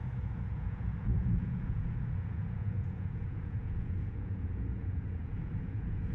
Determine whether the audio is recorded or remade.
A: remade